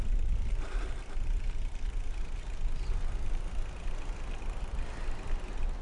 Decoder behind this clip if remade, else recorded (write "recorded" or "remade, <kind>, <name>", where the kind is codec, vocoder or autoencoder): recorded